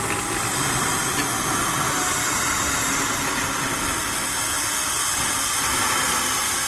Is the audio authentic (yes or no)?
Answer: yes